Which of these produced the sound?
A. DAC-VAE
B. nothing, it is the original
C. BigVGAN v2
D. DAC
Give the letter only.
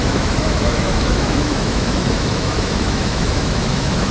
A